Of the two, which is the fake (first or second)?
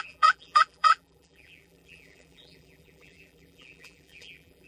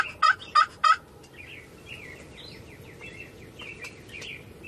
first